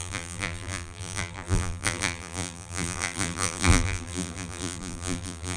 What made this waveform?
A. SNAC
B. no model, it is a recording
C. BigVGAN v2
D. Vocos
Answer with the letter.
C